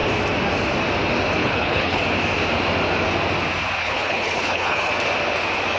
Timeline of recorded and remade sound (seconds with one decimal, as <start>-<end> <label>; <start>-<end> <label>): 0.0-1.4 recorded; 1.4-2.0 remade; 2.0-3.8 recorded; 3.8-4.9 remade; 4.9-5.8 recorded